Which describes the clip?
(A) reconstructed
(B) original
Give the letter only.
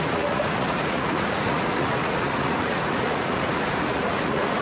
A